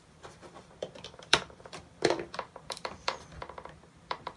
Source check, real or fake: fake